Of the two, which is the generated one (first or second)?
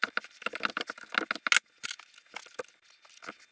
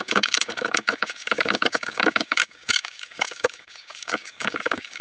second